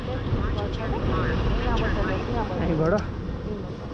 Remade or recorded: recorded